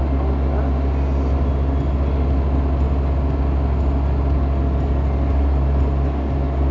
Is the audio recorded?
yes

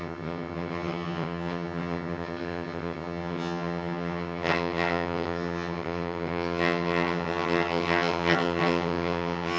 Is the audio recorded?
no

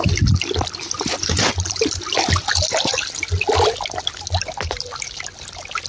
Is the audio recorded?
yes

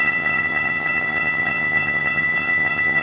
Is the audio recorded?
no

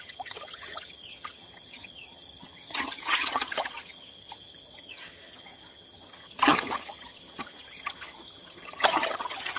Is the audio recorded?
no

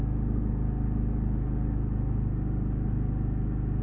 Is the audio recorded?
yes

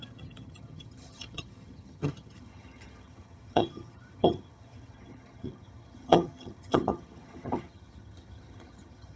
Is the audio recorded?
no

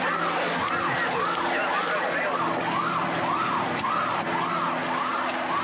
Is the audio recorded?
yes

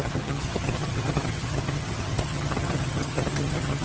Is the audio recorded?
no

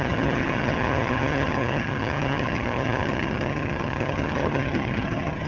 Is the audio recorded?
no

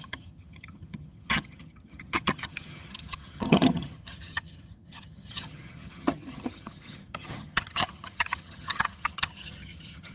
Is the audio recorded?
no